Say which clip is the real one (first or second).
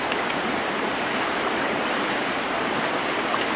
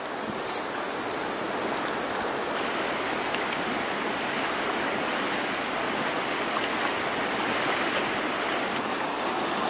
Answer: second